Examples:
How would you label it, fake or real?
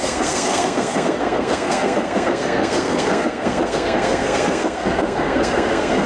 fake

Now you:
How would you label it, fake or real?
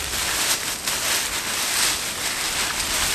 real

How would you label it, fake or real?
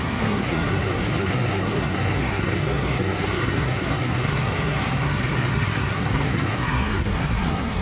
fake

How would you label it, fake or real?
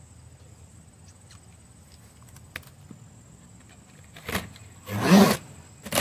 real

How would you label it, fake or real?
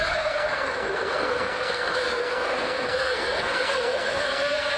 fake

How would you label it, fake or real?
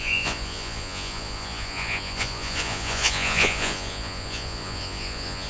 fake